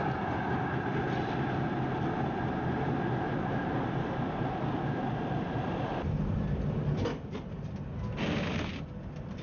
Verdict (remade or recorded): recorded